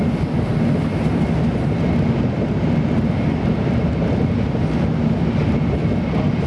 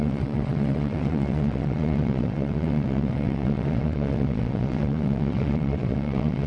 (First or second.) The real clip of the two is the first